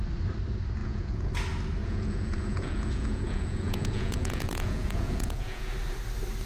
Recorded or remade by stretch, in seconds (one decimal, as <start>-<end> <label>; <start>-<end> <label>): 0.0-0.8 recorded; 0.8-1.3 remade; 1.3-1.8 recorded; 1.8-5.7 remade; 5.7-6.5 recorded